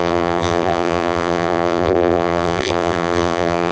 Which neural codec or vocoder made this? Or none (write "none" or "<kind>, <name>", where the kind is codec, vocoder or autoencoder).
vocoder, BigVGAN v2